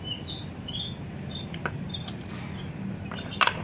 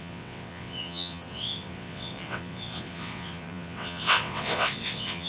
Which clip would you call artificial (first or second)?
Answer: second